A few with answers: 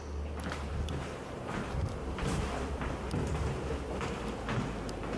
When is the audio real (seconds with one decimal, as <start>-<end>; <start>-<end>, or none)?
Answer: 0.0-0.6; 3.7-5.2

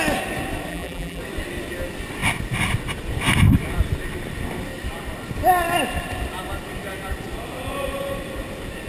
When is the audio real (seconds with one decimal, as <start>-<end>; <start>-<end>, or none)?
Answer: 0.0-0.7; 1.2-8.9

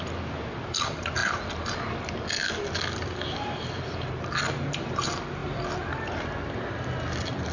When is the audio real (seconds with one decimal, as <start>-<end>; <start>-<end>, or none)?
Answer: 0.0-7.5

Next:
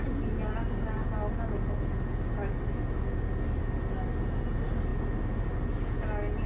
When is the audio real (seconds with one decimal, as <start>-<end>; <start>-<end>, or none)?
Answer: 0.0-6.5

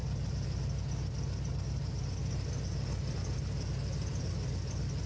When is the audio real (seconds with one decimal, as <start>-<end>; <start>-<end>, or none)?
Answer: 0.0-5.1

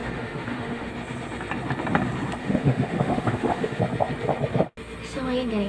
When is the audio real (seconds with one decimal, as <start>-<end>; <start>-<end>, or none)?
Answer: 0.9-2.4; 3.8-5.7